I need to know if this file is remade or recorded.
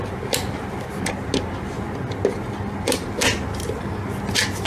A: recorded